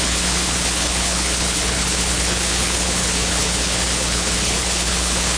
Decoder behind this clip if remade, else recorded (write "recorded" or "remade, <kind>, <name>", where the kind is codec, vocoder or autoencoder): remade, codec, HILCodec